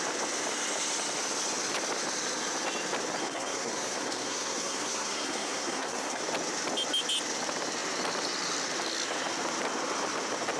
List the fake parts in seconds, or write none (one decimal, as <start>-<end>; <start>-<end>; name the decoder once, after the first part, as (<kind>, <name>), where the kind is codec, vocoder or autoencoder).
3.2-6.2 (codec, SNAC)